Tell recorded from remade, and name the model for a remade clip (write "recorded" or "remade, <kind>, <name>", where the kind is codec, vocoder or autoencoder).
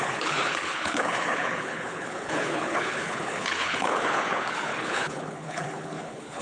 remade, codec, HILCodec